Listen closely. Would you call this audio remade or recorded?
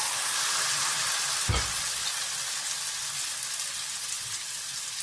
recorded